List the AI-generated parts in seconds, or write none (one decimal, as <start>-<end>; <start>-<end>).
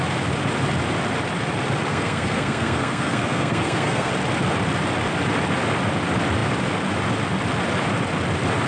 1.9-4.1